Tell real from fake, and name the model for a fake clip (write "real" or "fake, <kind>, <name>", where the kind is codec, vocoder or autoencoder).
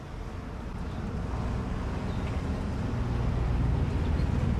real